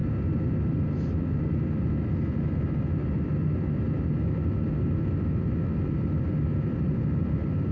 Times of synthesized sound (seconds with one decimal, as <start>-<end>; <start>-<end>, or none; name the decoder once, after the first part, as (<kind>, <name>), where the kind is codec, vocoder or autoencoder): none

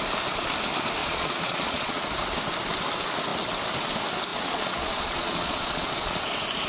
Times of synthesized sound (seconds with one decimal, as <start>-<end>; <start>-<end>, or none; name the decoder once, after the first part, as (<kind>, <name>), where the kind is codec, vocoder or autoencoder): 1.0-2.0 (vocoder, Vocos); 4.3-6.2

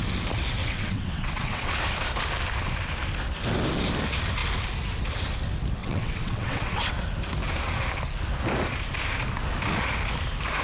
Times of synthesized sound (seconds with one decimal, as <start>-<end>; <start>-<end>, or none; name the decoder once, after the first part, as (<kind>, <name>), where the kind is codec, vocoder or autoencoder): 0.6-1.7 (vocoder, WaveNeXt); 5.8-6.9

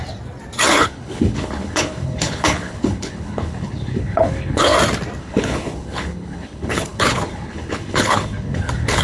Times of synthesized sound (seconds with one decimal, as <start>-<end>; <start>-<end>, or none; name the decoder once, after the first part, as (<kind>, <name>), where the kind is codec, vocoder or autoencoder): 0.7-4.7 (codec, HILCodec); 5.2-9.0

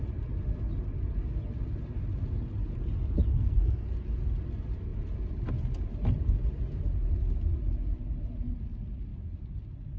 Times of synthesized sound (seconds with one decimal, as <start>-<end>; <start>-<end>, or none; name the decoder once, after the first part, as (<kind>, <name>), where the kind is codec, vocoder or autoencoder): 3.3-3.9 (codec, SNAC)